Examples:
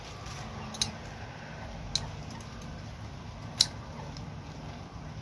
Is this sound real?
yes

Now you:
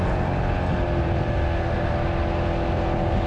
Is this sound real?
yes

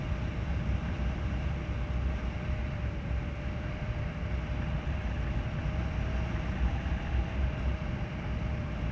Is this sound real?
yes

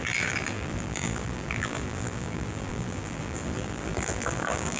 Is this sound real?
no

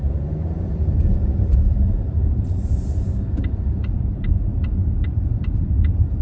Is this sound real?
no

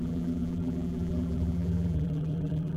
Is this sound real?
no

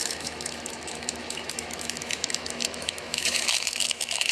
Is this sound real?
no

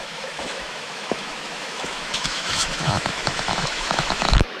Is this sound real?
no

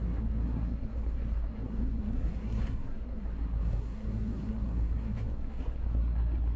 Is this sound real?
no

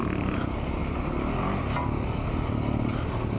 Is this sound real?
yes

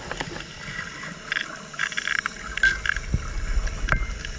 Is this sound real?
yes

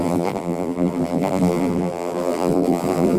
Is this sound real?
no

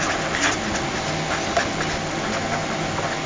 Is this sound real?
yes